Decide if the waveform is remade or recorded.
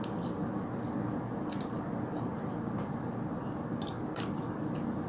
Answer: recorded